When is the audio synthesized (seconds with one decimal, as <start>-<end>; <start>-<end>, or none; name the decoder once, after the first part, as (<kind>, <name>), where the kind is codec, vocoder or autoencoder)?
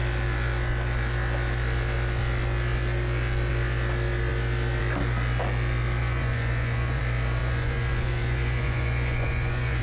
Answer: 6.0-7.0 (vocoder, Vocos); 7.4-9.8